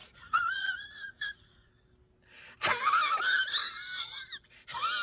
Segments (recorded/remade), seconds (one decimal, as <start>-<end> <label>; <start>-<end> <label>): 0.0-1.7 remade; 1.7-5.0 recorded